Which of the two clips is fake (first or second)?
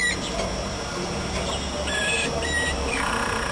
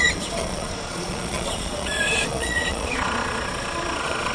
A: second